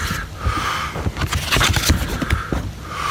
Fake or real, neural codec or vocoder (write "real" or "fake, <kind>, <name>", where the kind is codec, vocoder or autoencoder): real